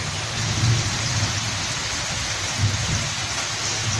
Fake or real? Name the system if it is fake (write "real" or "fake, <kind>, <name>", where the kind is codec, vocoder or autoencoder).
real